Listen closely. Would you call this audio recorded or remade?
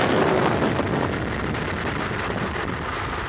remade